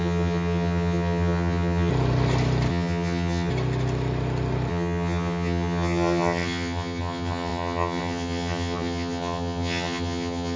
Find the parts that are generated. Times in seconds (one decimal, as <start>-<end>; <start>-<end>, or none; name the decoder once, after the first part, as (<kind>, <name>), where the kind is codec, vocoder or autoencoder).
0.0-1.9 (vocoder, HiFi-GAN); 2.7-3.5; 4.7-10.6